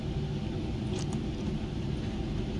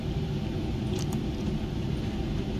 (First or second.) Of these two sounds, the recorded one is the first